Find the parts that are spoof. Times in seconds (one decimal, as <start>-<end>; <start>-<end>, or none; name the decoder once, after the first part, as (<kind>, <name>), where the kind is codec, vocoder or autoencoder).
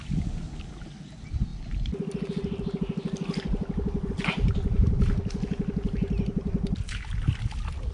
none